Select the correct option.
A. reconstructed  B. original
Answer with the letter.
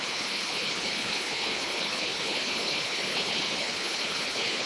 A